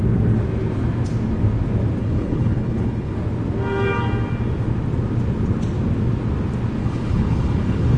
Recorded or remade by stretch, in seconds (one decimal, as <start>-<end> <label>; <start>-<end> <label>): 0.0-2.0 recorded; 2.0-3.2 remade; 3.2-6.8 recorded; 6.8-8.0 remade